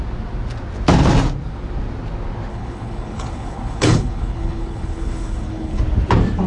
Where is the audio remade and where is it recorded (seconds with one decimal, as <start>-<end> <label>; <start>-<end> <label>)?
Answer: 0.0-2.5 recorded; 2.5-5.8 remade; 5.8-6.5 recorded